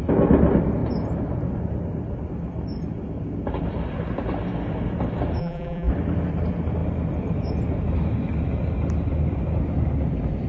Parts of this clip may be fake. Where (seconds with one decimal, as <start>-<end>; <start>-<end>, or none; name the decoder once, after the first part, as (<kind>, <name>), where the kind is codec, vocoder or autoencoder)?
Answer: 5.4-5.9 (vocoder, BigVGAN v2)